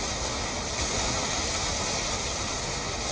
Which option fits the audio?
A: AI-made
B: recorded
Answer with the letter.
B